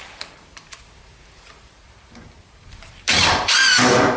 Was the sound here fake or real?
fake